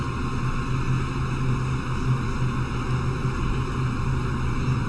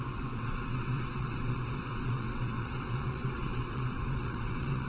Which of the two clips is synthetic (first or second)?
second